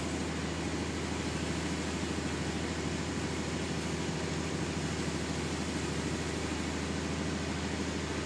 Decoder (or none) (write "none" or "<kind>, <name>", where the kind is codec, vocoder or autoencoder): none